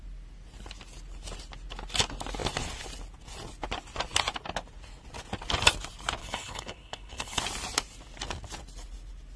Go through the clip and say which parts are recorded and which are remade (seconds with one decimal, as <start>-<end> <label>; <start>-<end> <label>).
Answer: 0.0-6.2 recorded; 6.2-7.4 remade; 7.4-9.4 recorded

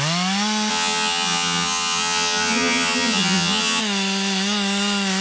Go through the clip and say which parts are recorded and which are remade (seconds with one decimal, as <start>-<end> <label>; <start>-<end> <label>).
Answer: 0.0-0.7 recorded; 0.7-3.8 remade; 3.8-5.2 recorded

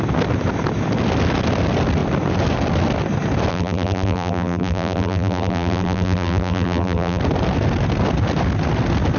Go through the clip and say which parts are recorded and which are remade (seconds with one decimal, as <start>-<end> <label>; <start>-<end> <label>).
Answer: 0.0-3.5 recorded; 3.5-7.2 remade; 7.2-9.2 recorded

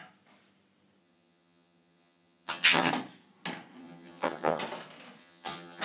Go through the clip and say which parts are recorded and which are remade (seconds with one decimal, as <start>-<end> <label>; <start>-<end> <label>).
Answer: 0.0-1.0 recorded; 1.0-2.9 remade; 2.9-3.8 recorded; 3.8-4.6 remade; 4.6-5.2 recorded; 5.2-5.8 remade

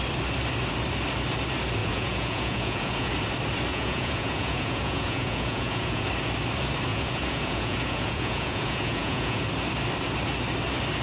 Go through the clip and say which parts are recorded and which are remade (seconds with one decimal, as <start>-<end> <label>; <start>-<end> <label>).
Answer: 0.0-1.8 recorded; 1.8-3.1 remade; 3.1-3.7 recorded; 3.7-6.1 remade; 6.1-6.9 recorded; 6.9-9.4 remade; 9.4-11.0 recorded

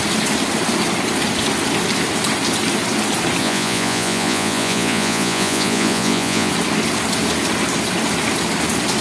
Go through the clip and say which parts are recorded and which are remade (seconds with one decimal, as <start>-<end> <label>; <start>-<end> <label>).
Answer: 0.0-3.4 recorded; 3.4-6.5 remade; 6.5-9.0 recorded

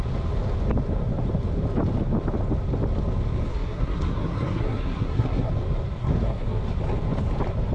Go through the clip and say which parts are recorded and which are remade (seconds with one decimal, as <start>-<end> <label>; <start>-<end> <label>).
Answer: 0.0-3.5 recorded; 3.5-5.5 remade; 5.5-6.0 recorded; 6.0-6.6 remade; 6.6-7.7 recorded